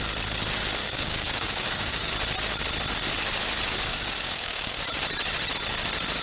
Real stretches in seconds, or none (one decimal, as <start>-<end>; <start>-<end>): 0.0-0.8; 2.1-3.9; 4.8-6.2